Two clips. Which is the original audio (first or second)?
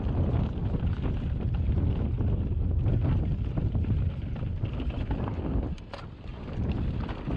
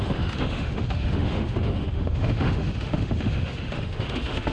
first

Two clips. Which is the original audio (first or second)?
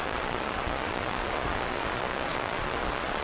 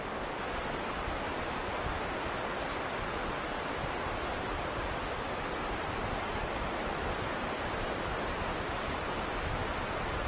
second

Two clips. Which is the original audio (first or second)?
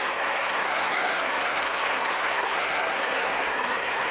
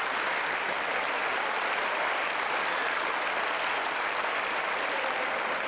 second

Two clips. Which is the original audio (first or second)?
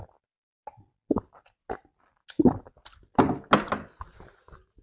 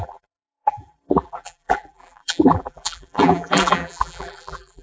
first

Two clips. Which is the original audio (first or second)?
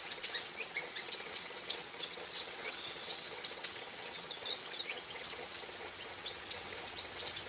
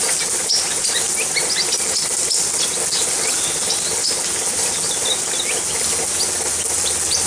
second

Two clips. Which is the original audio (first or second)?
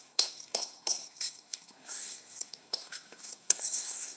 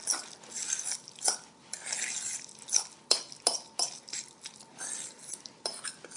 second